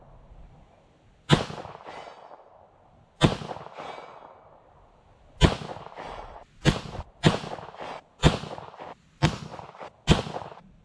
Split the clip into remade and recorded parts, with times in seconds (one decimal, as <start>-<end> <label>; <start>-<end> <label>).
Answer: 0.0-10.8 recorded